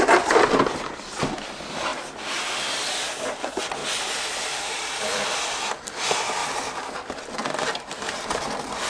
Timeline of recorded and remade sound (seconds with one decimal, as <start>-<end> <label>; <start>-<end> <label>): 0.0-1.9 remade; 1.9-2.8 recorded; 2.8-3.8 remade; 3.8-4.5 recorded; 4.5-8.9 remade